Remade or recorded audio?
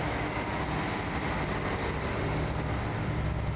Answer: recorded